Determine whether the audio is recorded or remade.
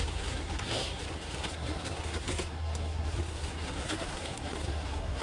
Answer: remade